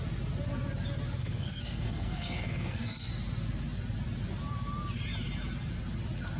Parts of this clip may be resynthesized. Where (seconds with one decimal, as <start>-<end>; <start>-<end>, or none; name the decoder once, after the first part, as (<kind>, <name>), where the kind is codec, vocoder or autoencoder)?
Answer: 1.2-3.1 (codec, SNAC)